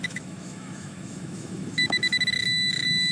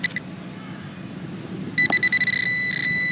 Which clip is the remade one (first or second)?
first